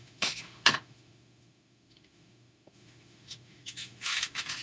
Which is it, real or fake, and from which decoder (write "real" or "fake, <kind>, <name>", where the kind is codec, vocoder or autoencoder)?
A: fake, autoencoder, DAC-VAE